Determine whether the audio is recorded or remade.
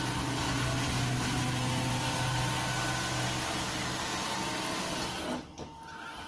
recorded